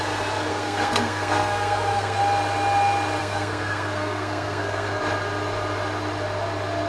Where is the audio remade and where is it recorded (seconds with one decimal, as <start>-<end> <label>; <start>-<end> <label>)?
0.0-0.5 recorded; 0.5-2.2 remade; 2.2-3.2 recorded; 3.2-5.0 remade; 5.0-6.9 recorded